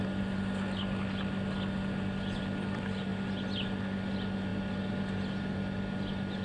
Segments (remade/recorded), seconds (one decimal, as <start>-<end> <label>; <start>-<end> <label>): 0.0-6.4 recorded

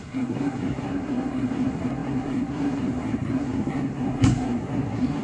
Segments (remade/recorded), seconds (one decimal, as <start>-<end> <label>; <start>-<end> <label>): 0.0-5.2 remade

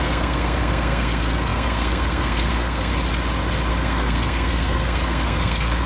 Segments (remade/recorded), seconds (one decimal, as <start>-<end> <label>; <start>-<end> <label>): 0.0-2.9 remade; 2.9-3.7 recorded; 3.7-5.9 remade

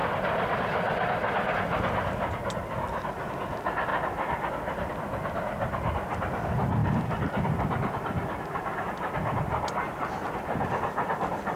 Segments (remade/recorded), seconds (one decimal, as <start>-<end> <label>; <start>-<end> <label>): 0.0-11.6 recorded

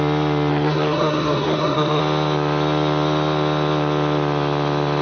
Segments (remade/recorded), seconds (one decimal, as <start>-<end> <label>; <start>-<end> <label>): 0.0-0.5 recorded; 0.5-2.0 remade; 2.0-5.0 recorded

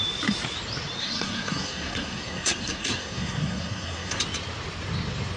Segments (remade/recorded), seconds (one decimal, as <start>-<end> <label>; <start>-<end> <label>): 0.0-1.0 recorded; 1.0-4.2 remade; 4.2-5.4 recorded

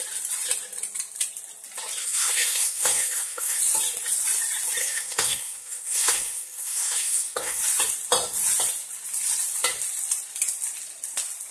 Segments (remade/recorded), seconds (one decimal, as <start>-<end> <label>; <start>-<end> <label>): 0.0-2.0 recorded; 2.0-3.6 remade; 3.6-4.8 recorded; 4.8-7.6 remade; 7.6-11.5 recorded